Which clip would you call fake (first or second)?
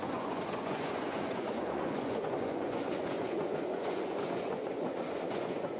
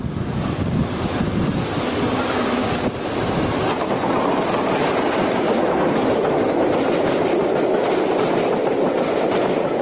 first